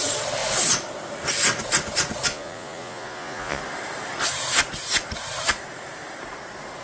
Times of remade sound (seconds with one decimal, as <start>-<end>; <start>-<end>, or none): 2.3-3.6